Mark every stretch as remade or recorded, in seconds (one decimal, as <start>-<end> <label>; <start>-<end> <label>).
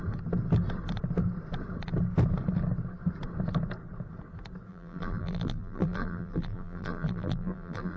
0.0-4.7 recorded; 4.7-8.0 remade